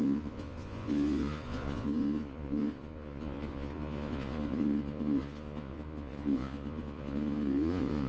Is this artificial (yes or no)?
yes